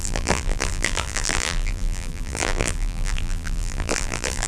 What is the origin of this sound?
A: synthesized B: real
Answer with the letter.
A